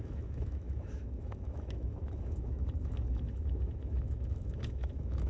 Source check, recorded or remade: remade